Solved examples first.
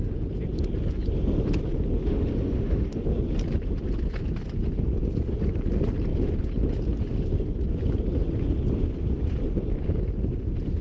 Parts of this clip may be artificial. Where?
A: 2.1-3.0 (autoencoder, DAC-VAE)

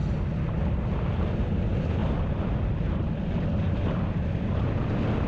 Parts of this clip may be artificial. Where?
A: none

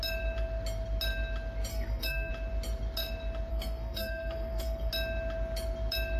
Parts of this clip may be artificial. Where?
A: 1.7-2.3 (codec, SNAC); 3.5-4.9

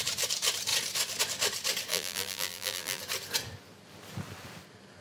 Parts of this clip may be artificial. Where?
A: 1.9-3.0 (vocoder, BigVGAN v2)